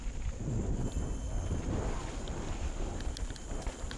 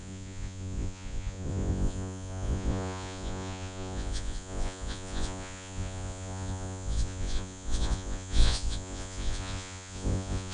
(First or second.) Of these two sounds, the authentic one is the first